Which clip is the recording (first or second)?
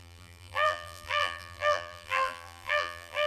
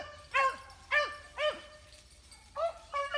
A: second